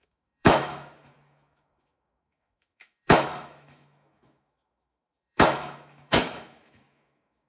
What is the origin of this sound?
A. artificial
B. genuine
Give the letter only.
A